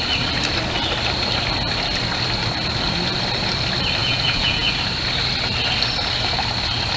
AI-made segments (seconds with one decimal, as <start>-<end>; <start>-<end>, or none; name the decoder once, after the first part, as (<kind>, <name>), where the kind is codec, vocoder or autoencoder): 4.0-4.7 (vocoder, Vocos)